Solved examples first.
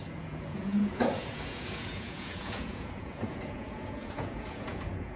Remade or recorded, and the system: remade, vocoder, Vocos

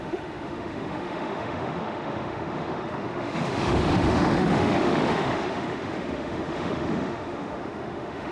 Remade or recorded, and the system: remade, autoencoder, DAC-VAE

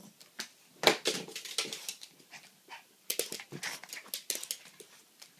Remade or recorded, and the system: recorded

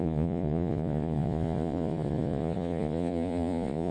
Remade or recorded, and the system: remade, vocoder, Vocos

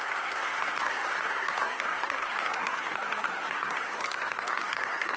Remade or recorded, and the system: remade, codec, SNAC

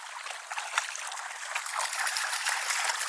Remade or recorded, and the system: recorded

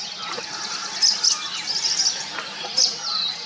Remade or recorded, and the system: recorded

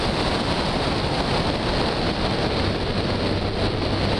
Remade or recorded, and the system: recorded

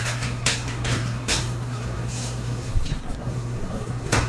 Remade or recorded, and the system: remade, codec, SNAC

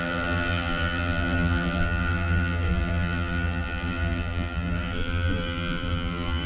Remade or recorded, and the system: remade, vocoder, BigVGAN v2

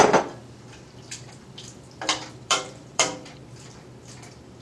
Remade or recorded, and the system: remade, vocoder, BigVGAN v2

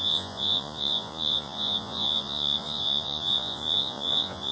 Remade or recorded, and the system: remade, vocoder, Vocos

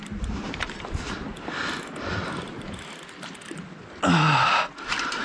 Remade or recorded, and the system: recorded